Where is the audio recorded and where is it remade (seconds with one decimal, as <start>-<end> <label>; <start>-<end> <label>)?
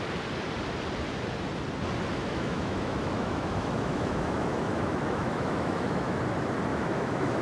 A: 0.0-2.2 recorded; 2.2-6.2 remade; 6.2-6.7 recorded; 6.7-7.4 remade